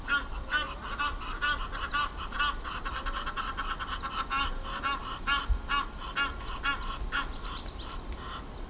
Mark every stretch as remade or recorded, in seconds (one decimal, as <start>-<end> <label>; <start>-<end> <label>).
0.0-8.7 recorded